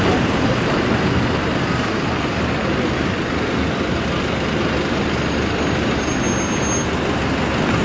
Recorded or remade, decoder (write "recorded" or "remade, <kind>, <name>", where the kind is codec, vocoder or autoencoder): recorded